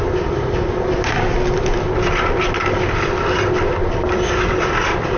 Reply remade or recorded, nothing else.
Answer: recorded